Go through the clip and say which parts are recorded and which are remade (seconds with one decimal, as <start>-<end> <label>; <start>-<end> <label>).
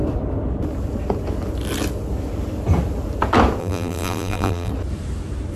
0.0-3.6 recorded; 3.6-4.7 remade; 4.7-5.6 recorded